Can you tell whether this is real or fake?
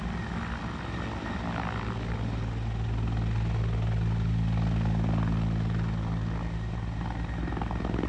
real